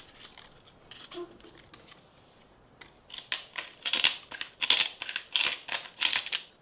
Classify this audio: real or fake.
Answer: real